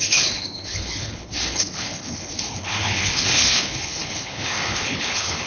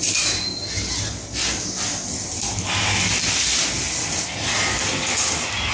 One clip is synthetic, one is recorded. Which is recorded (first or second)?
second